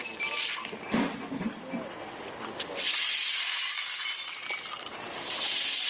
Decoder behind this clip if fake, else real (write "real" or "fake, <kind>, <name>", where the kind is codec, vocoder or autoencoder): real